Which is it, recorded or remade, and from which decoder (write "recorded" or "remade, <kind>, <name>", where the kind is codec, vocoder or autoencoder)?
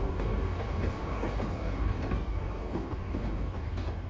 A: remade, codec, DAC